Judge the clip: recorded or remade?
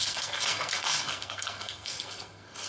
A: remade